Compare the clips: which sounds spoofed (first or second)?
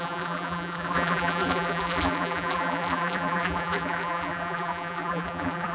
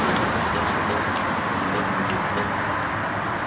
first